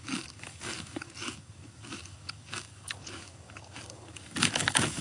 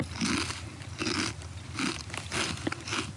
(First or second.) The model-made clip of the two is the first